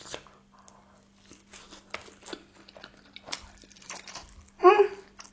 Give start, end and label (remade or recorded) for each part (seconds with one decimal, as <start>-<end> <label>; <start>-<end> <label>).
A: 0.0-5.3 recorded